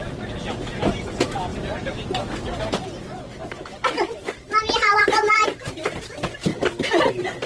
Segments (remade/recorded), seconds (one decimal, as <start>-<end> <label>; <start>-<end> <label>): 0.0-7.5 recorded